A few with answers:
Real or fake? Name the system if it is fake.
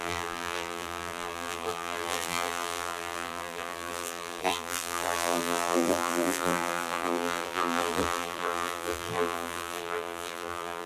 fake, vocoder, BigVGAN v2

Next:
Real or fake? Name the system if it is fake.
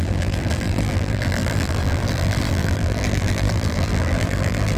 fake, vocoder, BigVGAN v2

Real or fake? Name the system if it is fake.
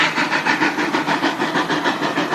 fake, vocoder, BigVGAN v2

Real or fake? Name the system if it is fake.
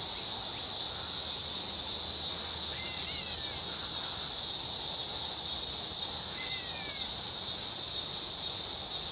real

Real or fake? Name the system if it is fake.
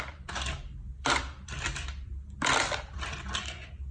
fake, vocoder, BigVGAN v2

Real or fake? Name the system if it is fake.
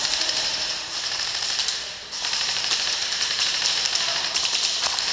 fake, vocoder, BigVGAN v2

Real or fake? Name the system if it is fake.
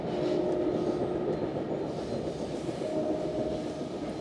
real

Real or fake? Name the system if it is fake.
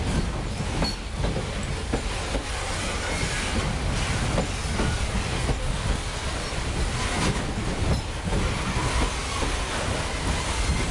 real